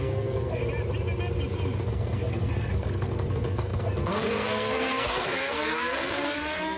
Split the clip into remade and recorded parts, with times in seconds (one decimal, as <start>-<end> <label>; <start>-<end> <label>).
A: 0.0-0.6 remade; 0.6-1.9 recorded; 1.9-6.8 remade